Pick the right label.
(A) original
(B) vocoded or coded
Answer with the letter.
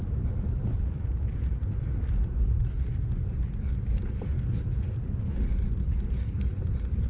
A